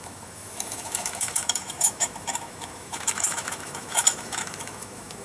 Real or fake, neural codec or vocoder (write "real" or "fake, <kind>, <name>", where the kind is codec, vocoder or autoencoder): fake, autoencoder, DAC-VAE